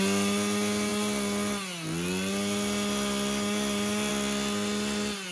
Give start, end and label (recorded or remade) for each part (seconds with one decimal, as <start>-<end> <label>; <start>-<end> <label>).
0.0-5.3 recorded